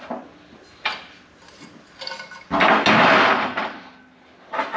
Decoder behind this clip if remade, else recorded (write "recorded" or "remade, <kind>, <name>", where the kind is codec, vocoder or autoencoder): recorded